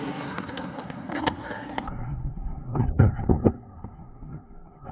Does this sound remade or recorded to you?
remade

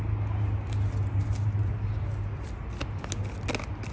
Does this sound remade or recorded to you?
recorded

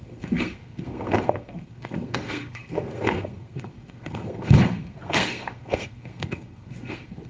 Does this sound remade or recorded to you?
remade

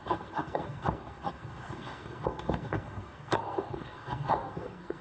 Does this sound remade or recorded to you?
remade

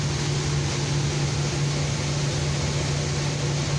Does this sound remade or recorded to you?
recorded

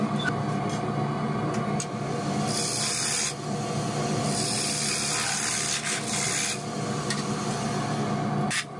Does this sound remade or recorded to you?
recorded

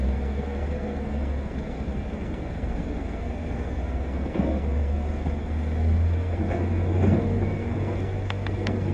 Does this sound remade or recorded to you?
remade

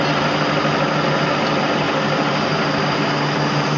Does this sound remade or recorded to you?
recorded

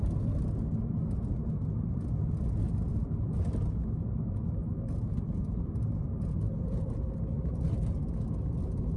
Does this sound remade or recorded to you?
recorded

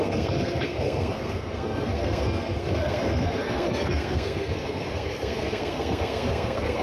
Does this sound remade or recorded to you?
remade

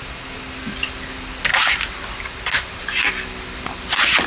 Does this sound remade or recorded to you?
recorded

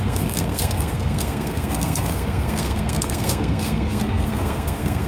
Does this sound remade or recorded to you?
remade